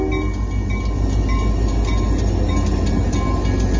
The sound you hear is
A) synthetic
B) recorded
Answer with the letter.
B